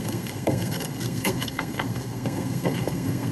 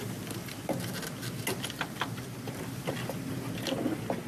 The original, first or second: second